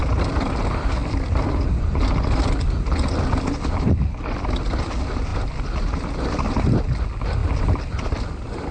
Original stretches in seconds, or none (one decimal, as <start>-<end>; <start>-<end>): 0.0-5.3; 6.1-7.4; 8.0-8.7